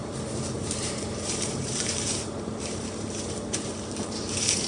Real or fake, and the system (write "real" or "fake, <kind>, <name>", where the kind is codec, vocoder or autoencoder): fake, vocoder, BigVGAN v2